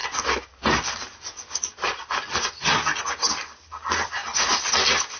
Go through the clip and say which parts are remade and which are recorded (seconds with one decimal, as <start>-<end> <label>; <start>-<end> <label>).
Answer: 0.0-5.2 recorded